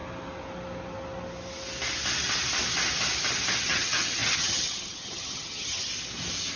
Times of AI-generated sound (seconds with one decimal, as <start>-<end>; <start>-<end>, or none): 3.6-5.9